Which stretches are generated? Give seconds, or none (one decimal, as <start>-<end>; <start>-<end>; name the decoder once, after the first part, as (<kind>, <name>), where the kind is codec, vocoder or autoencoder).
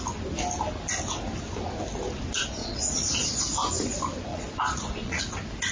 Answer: 2.6-3.4 (vocoder, Vocos); 4.3-5.2